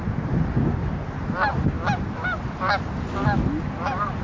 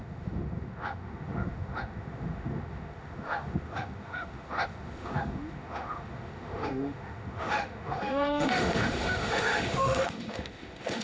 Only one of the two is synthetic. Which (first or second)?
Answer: second